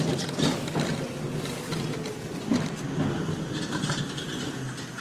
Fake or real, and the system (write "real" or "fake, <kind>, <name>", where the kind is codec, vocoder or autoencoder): real